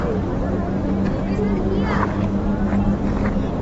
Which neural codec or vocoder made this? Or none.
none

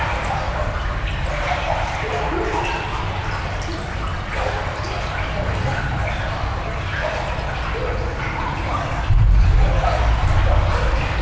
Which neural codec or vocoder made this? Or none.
none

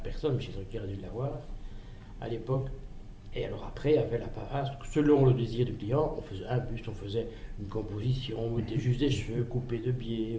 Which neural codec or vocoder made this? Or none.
vocoder, BigVGAN v2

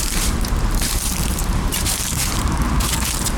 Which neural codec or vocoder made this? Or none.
vocoder, BigVGAN v2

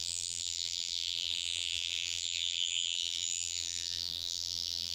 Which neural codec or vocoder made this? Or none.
vocoder, BigVGAN v2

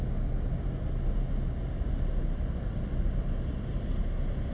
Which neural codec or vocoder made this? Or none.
none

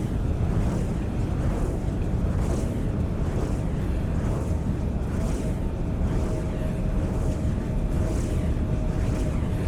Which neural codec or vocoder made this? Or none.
none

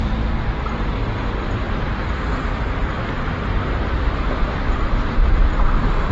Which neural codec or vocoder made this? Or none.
vocoder, BigVGAN v2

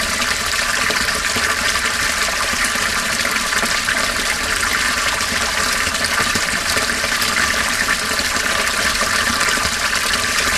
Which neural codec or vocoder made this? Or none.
vocoder, BigVGAN v2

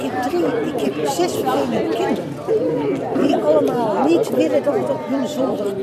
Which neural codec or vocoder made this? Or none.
vocoder, BigVGAN v2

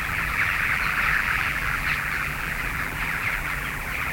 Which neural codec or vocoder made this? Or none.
vocoder, BigVGAN v2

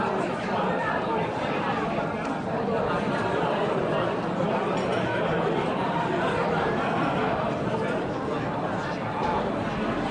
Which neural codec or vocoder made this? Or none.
none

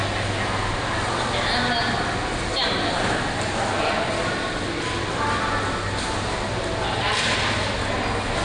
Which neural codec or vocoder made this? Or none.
none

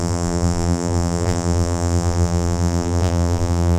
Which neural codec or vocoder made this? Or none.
vocoder, BigVGAN v2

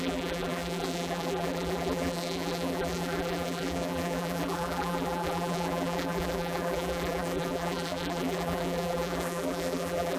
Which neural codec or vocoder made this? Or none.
vocoder, BigVGAN v2